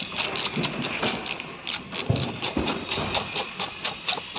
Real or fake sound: real